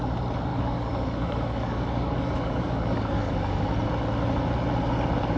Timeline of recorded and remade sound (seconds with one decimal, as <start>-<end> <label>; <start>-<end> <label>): 0.0-0.5 recorded; 0.5-3.7 remade; 3.7-5.4 recorded